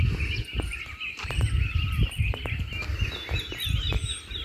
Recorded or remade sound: recorded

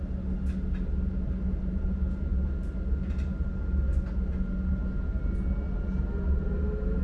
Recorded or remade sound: recorded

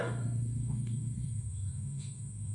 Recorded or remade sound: remade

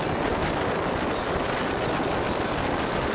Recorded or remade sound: recorded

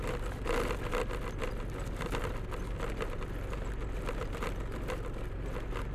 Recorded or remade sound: recorded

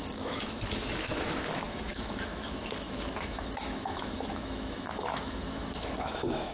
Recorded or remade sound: remade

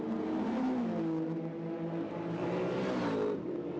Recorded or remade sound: recorded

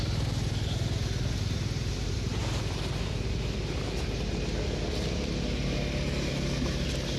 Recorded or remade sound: recorded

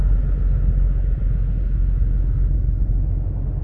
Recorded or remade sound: recorded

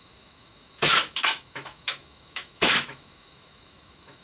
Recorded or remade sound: remade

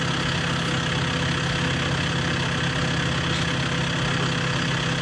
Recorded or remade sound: recorded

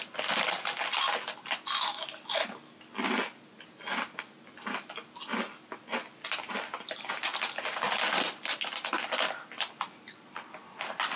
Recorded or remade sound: recorded